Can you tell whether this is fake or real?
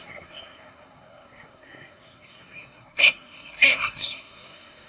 fake